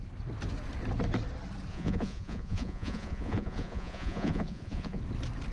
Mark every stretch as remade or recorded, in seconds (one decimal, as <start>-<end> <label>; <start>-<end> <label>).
0.0-1.7 recorded; 1.7-5.0 remade; 5.0-5.5 recorded

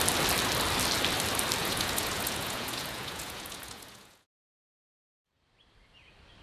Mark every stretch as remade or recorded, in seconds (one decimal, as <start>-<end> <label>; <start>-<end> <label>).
0.0-1.6 recorded; 1.6-5.3 remade; 5.3-6.4 recorded

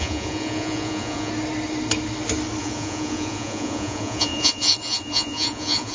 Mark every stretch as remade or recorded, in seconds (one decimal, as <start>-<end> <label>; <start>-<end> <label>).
0.0-1.3 remade; 1.3-2.6 recorded; 2.6-5.9 remade